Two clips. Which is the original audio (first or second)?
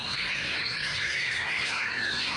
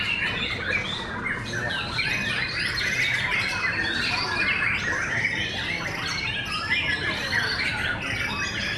second